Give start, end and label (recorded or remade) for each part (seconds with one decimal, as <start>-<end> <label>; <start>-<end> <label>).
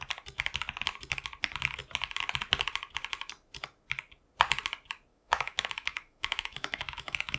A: 0.0-5.1 recorded; 5.1-7.4 remade